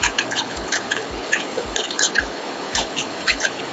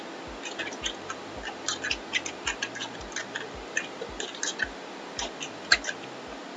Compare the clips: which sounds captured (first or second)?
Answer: second